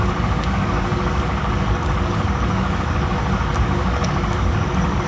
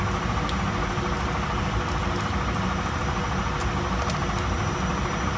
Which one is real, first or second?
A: second